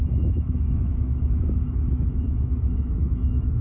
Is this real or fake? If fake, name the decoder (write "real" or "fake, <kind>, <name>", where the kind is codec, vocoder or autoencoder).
fake, autoencoder, DAC-VAE